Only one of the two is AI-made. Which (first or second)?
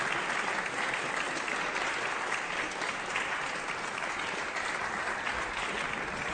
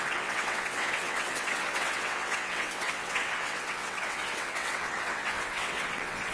second